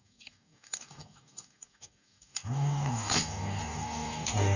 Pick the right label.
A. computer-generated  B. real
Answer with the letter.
A